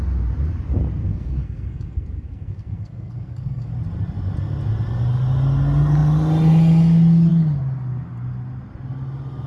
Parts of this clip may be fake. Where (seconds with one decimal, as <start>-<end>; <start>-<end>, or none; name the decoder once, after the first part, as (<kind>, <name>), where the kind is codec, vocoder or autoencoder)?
1.0-3.7 (codec, SNAC)